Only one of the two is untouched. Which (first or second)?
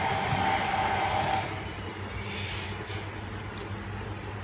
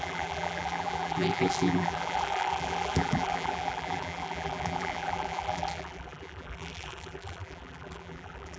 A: first